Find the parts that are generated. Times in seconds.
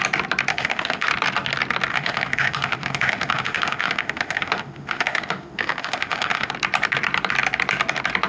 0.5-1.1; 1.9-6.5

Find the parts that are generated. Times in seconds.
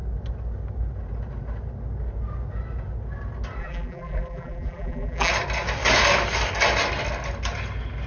3.6-5.3